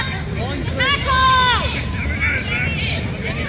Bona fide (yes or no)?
yes